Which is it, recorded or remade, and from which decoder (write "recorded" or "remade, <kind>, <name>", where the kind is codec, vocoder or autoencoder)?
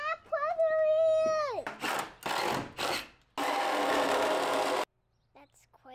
recorded